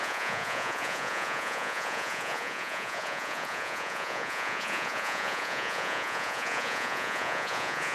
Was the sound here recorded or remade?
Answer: remade